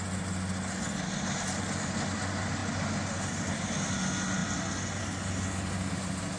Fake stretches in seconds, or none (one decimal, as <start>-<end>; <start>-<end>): none